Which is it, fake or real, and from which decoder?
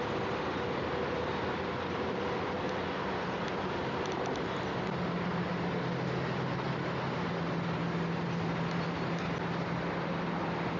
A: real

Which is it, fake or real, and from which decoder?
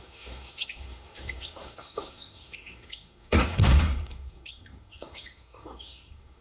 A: fake, codec, SNAC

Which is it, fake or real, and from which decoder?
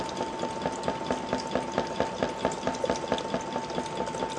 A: real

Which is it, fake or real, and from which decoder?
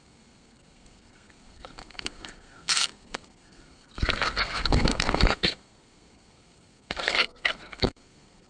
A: fake, codec, SNAC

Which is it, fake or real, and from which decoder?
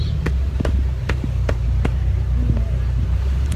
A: real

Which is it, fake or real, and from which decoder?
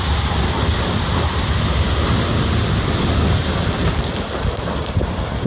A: real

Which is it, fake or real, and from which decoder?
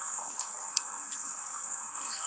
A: fake, codec, SNAC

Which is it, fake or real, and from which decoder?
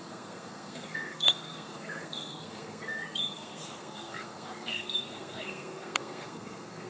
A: fake, codec, SNAC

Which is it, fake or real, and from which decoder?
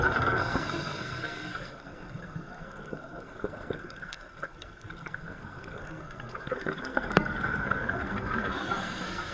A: fake, codec, SNAC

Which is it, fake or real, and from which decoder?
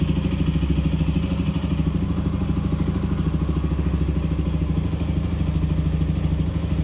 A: real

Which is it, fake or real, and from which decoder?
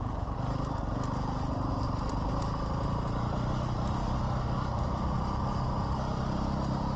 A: real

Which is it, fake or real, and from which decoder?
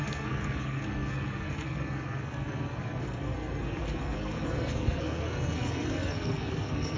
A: fake, codec, SNAC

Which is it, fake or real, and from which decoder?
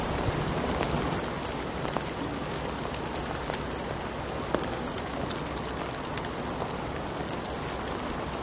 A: real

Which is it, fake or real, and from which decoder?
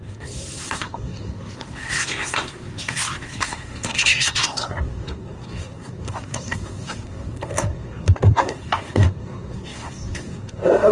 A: fake, codec, SNAC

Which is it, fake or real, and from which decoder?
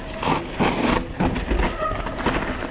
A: real